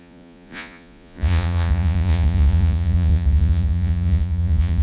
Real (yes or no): no